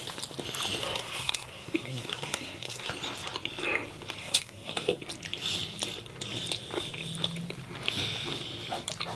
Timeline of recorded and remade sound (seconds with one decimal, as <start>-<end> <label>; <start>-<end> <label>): 0.0-0.8 recorded; 0.8-2.9 remade; 2.9-4.2 recorded; 4.2-5.0 remade; 5.0-9.2 recorded